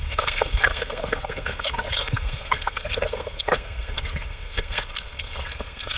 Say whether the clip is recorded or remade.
remade